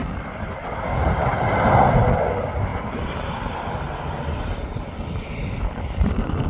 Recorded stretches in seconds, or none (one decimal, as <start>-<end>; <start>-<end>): 2.0-2.7